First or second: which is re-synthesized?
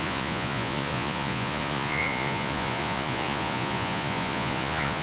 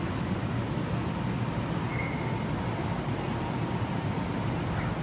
first